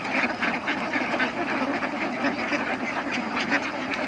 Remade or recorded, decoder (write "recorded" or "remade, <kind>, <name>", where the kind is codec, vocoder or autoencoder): recorded